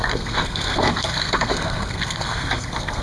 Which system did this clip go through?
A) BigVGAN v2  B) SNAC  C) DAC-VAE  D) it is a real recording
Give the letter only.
B